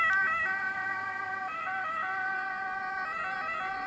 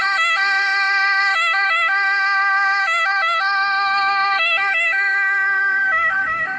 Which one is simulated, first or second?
second